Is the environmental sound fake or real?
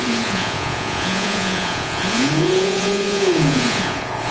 fake